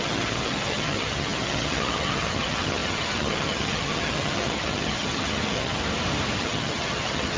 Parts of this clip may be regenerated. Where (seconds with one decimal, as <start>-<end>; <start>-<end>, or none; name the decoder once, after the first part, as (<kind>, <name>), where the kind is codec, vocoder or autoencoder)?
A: 0.0-5.8 (vocoder, HiFi-GAN); 6.4-7.4